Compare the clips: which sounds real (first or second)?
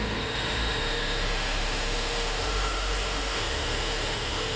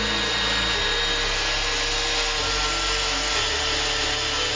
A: second